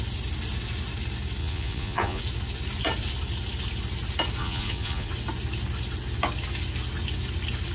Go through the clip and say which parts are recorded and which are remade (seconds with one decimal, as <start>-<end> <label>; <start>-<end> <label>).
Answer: 0.0-1.4 recorded; 1.4-2.2 remade; 2.2-4.4 recorded; 4.4-5.1 remade; 5.1-7.7 recorded